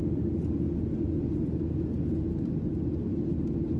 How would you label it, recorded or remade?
recorded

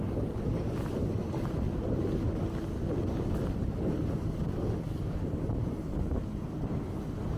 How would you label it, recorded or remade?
recorded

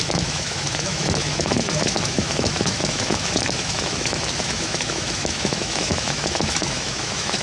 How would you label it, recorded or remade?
remade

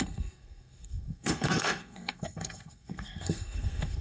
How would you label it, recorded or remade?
remade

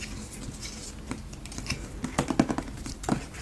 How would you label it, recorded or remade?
recorded